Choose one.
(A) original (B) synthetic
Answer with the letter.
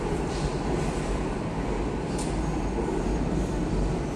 A